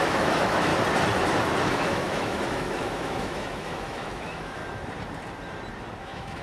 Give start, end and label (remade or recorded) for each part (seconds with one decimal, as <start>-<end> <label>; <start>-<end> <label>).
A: 0.0-0.7 remade; 0.7-1.6 recorded; 1.6-4.6 remade; 4.6-6.0 recorded; 6.0-6.4 remade